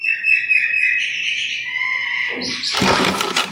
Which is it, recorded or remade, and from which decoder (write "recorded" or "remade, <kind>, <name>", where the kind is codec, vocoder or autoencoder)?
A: recorded